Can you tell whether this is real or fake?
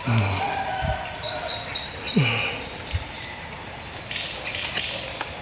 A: real